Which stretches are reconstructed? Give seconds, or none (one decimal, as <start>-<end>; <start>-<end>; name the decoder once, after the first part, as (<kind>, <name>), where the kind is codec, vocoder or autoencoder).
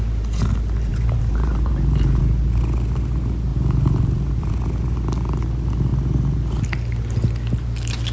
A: 0.9-2.2 (vocoder, BigVGAN v2); 3.5-4.5